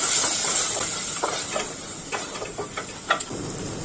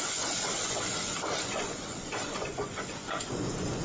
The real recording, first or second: first